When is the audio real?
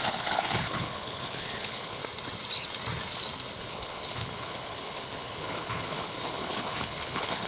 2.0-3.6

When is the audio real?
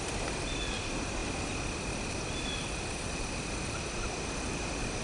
0.0-5.0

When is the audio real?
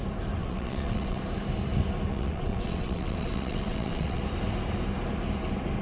0.0-0.4; 1.2-2.1; 4.2-5.8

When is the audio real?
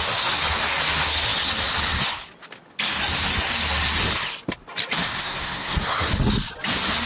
0.0-5.2; 6.1-7.1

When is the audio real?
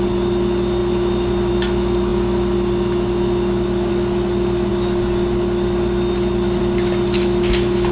0.0-7.9